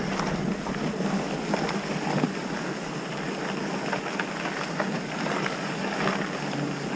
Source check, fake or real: real